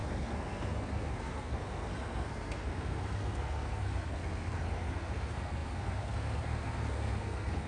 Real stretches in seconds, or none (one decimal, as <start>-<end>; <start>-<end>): none